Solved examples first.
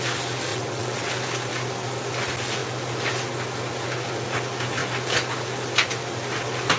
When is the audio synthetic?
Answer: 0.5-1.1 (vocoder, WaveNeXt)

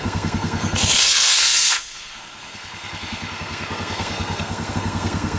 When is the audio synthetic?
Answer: 0.0-5.4 (codec, SNAC)

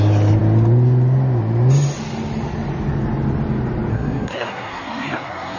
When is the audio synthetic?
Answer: 3.9-5.6 (codec, SNAC)

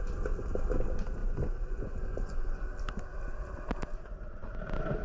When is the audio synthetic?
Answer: 1.2-2.6 (vocoder, Vocos)

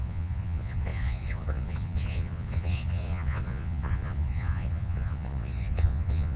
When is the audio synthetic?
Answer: 0.0-6.4 (vocoder, Vocos)

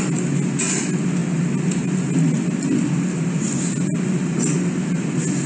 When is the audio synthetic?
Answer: none